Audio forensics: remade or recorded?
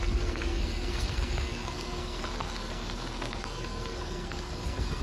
remade